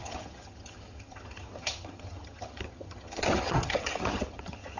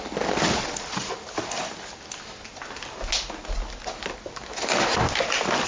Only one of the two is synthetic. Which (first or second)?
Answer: first